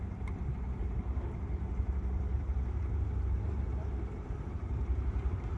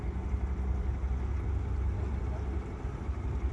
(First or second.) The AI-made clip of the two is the first